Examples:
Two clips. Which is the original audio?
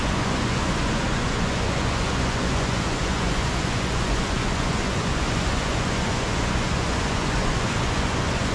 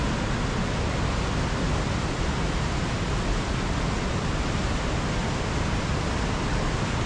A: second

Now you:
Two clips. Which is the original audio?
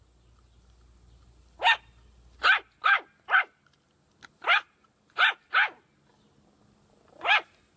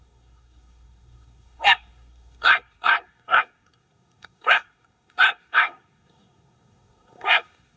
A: first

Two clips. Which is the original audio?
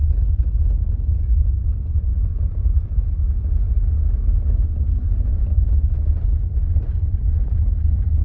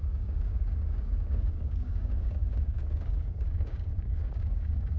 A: first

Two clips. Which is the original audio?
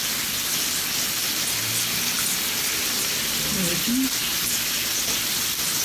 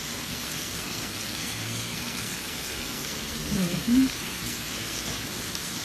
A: first